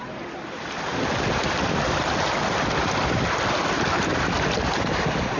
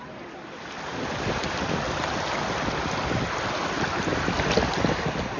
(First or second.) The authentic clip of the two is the second